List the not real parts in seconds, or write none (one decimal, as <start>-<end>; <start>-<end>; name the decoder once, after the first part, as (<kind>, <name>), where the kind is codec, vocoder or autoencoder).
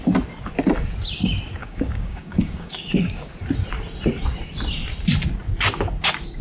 1.6-3.3 (codec, DAC)